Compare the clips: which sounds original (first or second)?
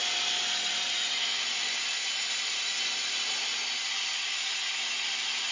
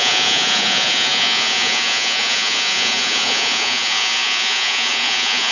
first